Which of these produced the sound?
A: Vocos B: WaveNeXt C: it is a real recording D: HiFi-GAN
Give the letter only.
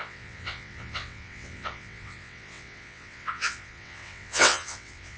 B